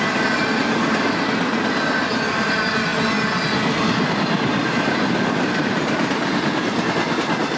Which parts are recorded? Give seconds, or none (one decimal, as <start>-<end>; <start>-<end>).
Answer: 0.0-7.6